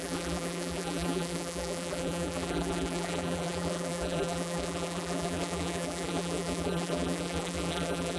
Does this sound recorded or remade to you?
remade